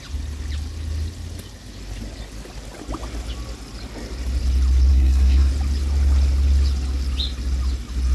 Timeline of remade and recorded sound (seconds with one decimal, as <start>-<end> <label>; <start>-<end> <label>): 0.0-4.9 recorded; 4.9-5.5 remade; 5.5-8.1 recorded